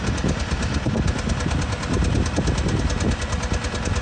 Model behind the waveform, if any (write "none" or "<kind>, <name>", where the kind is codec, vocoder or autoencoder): none